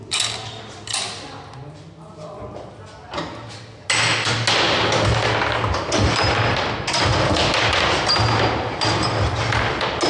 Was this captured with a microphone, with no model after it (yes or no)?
yes